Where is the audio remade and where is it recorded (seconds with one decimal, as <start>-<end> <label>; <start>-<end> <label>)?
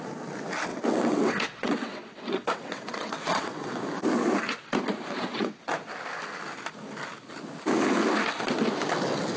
0.0-0.7 recorded; 0.7-3.8 remade; 3.8-5.3 recorded; 5.3-5.9 remade; 5.9-9.4 recorded